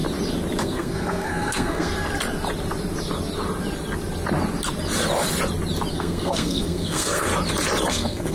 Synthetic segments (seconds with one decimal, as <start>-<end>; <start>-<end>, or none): 0.6-1.9; 5.9-7.3; 7.9-8.3